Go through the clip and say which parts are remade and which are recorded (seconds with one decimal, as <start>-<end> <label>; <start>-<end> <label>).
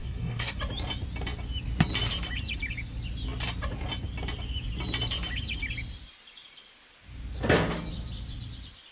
0.0-0.6 remade; 0.6-8.9 recorded